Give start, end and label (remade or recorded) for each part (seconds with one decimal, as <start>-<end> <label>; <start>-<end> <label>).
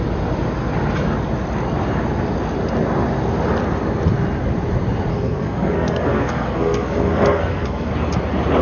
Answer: 0.0-5.1 recorded; 5.1-7.9 remade; 7.9-8.6 recorded